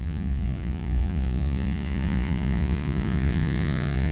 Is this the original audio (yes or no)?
no